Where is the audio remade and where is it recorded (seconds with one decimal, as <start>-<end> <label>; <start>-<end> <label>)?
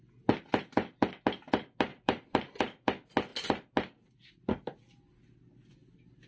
0.0-1.9 recorded; 1.9-2.6 remade; 2.6-6.3 recorded